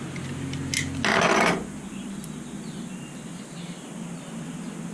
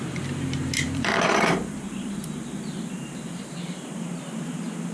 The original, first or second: first